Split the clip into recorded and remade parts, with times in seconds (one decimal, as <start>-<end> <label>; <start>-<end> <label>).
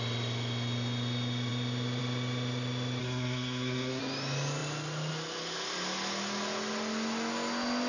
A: 0.0-3.0 recorded; 3.0-4.0 remade; 4.0-7.9 recorded